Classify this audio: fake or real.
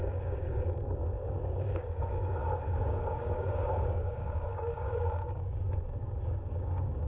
fake